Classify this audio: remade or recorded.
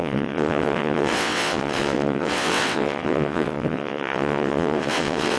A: remade